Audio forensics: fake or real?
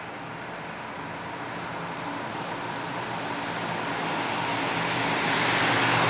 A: real